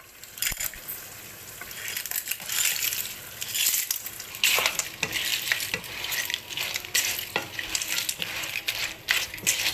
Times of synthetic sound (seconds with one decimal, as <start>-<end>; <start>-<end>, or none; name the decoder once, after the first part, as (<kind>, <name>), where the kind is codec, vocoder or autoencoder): none